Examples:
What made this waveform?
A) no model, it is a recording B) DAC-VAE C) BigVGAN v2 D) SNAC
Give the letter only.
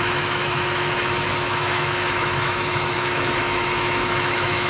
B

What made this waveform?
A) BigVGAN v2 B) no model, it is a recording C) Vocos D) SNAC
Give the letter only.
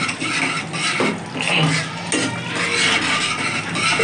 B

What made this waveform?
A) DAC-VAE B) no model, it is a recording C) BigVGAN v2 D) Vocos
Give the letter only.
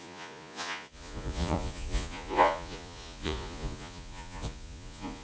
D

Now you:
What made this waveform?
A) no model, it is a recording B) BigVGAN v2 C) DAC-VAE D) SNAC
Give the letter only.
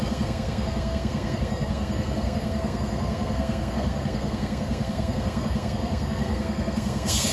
D